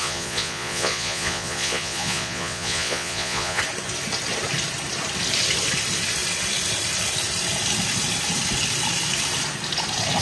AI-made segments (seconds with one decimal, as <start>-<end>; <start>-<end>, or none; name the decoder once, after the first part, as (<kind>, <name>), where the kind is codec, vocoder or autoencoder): 0.0-3.6 (vocoder, Vocos)